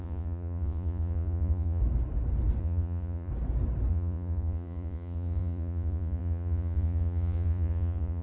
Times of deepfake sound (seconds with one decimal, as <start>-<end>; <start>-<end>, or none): 0.0-1.8; 2.6-3.3; 3.9-8.2